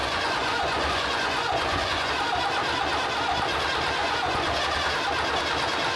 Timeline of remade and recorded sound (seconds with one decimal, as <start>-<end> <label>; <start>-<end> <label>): 0.0-2.1 remade; 2.1-4.0 recorded; 4.0-4.6 remade; 4.6-6.0 recorded